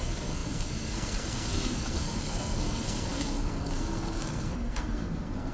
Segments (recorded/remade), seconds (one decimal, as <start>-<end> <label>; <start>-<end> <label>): 0.0-5.5 remade